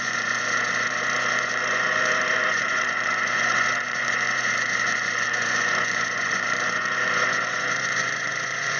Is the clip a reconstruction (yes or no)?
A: yes